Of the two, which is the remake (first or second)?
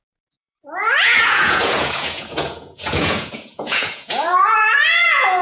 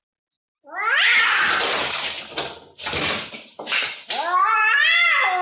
first